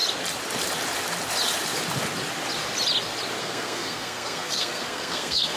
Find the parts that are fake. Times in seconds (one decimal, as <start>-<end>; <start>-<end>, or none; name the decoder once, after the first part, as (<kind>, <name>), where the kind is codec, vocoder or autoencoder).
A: 3.4-5.6 (codec, SNAC)